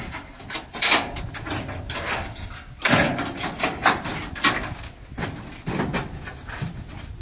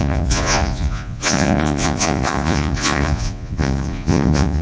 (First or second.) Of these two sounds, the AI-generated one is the second